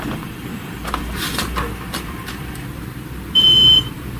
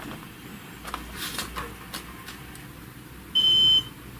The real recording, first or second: second